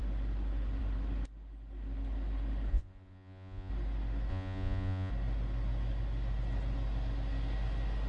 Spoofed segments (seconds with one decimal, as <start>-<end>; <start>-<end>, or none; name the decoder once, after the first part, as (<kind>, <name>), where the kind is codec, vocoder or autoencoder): 2.7-3.7 (vocoder, Vocos); 4.3-5.1